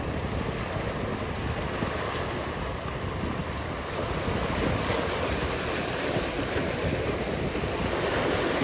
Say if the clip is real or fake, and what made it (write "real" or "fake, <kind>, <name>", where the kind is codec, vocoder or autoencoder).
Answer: real